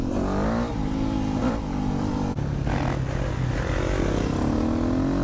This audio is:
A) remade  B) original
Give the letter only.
B